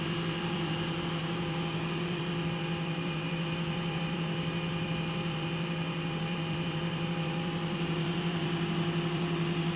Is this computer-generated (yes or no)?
yes